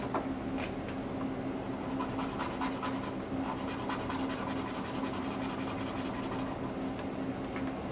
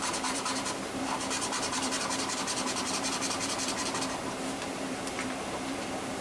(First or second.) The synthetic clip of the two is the second